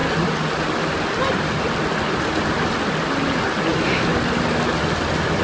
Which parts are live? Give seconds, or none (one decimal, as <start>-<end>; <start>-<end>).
0.0-5.4